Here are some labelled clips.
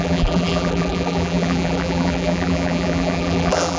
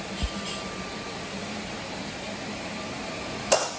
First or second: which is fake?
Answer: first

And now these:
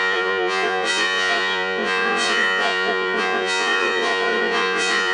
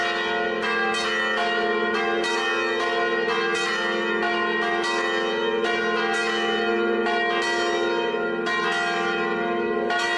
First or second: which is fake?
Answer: first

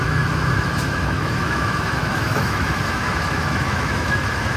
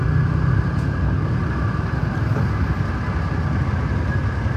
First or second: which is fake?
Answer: first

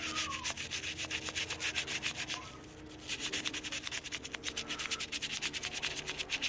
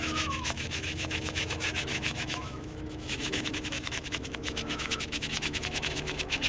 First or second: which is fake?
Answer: second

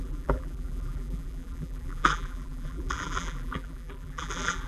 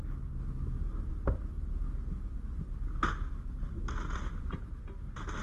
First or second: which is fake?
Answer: first